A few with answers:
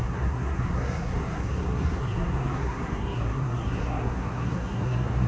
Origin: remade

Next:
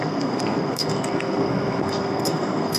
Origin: remade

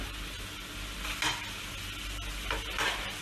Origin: recorded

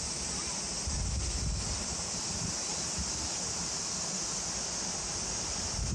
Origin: recorded